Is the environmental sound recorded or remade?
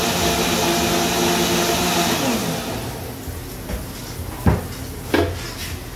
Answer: recorded